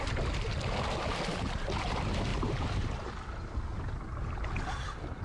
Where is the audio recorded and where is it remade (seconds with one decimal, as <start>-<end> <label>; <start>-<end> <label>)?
0.0-2.3 recorded; 2.3-3.1 remade; 3.1-5.2 recorded